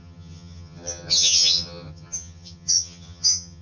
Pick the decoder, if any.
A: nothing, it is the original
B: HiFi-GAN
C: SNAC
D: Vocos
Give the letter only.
B